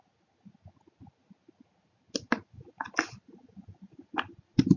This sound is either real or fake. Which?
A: real